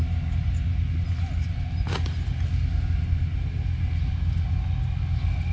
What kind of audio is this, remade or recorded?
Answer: recorded